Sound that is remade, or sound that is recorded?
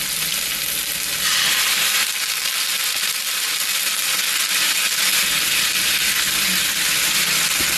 recorded